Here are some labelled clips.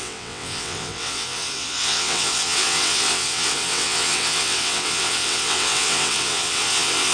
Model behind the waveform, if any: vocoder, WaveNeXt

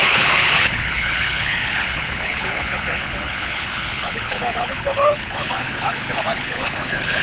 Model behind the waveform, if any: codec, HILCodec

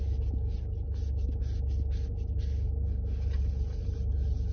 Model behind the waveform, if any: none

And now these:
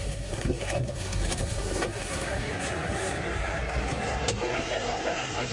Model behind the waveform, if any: codec, SNAC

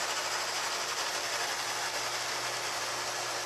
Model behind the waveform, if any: none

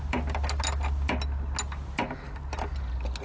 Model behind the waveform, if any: none